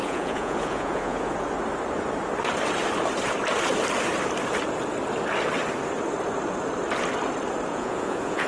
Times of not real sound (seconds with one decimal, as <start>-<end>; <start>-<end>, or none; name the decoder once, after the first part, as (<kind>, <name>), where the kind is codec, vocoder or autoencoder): 0.0-1.3 (vocoder, Vocos); 7.7-8.5